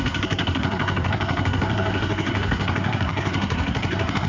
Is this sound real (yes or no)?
no